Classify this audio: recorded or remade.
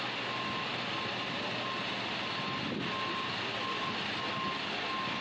recorded